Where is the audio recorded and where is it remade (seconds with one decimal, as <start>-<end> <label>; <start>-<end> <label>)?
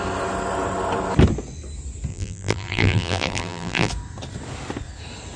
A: 0.0-2.1 recorded; 2.1-3.9 remade; 3.9-5.4 recorded